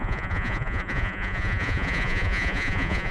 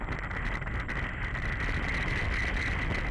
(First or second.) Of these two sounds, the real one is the second